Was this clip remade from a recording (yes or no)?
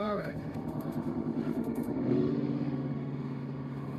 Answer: yes